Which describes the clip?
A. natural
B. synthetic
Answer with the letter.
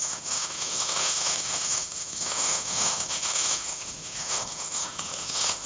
B